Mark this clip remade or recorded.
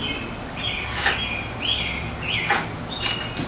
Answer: recorded